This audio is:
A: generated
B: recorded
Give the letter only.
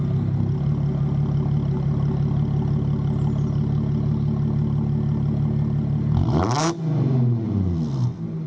B